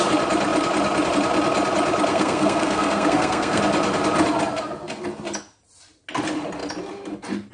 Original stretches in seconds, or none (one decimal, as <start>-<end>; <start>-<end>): 0.0-2.1; 3.6-7.5